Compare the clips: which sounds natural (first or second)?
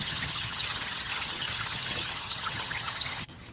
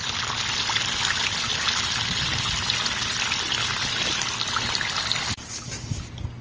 second